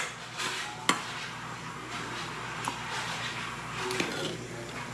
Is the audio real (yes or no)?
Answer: yes